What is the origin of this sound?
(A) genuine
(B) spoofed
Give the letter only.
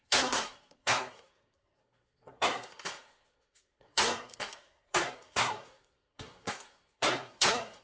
B